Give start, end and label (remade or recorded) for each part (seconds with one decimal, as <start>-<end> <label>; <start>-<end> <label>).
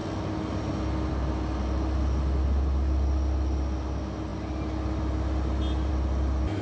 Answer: 0.0-6.6 recorded